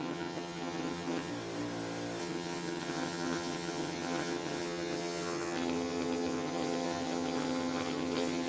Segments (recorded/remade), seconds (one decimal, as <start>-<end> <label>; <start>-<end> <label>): 0.0-1.3 remade; 1.3-2.2 recorded; 2.2-8.5 remade

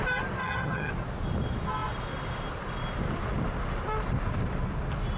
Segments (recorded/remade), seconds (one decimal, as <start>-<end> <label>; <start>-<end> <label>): 0.0-0.4 recorded; 0.4-0.9 remade; 0.9-5.2 recorded

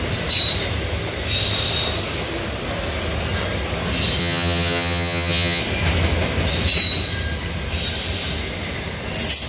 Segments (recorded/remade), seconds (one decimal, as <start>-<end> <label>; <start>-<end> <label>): 0.0-4.2 recorded; 4.2-5.6 remade; 5.6-9.5 recorded

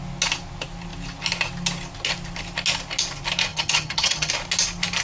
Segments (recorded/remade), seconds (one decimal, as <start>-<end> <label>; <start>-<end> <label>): 0.0-3.5 recorded; 3.5-4.3 remade; 4.3-5.0 recorded

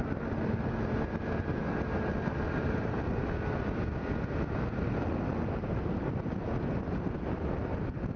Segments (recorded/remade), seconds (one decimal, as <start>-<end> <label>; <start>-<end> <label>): 0.0-8.2 recorded

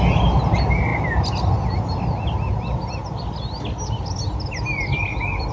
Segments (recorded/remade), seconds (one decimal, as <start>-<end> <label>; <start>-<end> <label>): 0.0-5.5 recorded